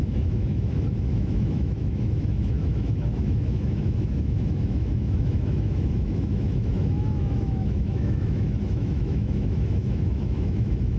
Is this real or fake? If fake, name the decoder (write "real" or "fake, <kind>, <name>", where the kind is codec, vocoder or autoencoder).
fake, autoencoder, DAC-VAE